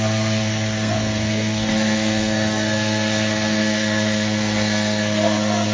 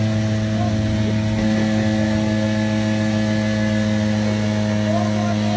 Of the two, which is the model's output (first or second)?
first